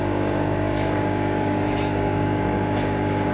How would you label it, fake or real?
fake